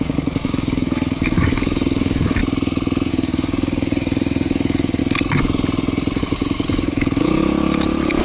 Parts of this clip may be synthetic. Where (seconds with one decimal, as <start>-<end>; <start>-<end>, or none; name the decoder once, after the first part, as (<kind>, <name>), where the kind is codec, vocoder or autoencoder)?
0.0-2.4 (codec, DAC); 3.1-5.0; 6.2-7.4